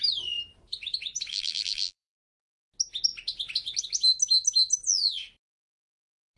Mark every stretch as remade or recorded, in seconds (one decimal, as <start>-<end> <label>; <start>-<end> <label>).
0.0-1.3 recorded; 1.3-2.4 remade; 2.4-6.4 recorded